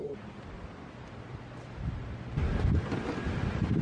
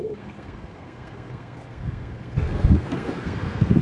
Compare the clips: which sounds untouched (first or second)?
first